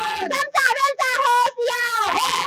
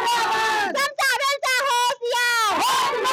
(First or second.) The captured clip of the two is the second